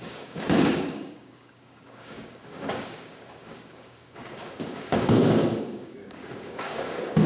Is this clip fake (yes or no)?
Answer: yes